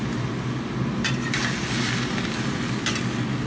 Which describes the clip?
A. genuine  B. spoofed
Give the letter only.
A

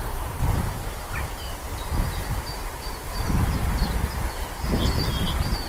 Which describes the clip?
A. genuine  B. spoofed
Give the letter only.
B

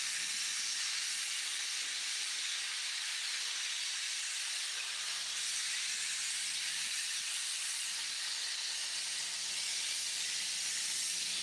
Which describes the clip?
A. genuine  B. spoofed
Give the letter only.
A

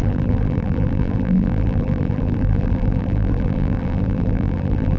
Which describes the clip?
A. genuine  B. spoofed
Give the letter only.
B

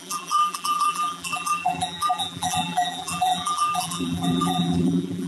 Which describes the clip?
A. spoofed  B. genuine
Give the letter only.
A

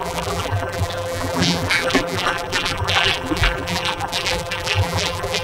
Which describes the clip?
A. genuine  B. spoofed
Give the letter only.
B